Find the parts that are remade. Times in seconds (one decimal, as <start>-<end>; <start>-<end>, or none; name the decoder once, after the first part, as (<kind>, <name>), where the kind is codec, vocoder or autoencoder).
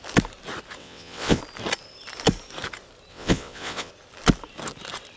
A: 0.8-1.4 (vocoder, WaveNeXt); 3.1-3.9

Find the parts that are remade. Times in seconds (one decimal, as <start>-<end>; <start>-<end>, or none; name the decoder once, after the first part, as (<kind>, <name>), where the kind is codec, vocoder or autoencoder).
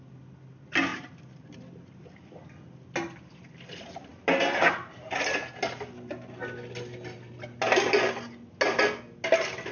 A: none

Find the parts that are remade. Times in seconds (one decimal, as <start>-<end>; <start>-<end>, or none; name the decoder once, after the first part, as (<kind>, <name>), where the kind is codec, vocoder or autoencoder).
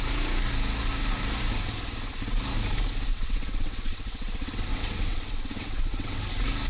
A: 3.1-6.2 (vocoder, WaveNeXt)